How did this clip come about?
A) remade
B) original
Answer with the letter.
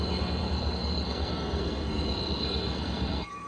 A